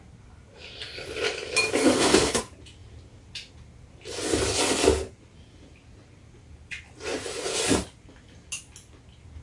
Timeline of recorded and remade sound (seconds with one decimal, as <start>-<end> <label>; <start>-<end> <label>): 0.0-1.8 recorded; 1.8-2.4 remade; 2.4-9.4 recorded